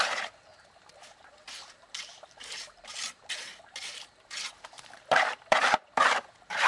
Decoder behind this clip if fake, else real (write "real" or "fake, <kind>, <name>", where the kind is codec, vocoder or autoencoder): fake, vocoder, BigVGAN v2